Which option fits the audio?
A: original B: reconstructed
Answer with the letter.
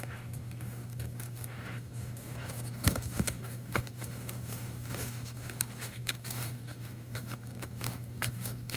B